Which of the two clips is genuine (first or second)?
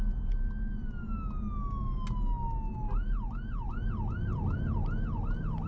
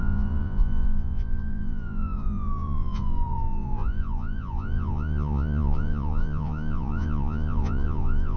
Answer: first